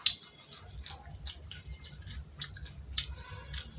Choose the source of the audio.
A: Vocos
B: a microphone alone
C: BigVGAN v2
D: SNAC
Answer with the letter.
B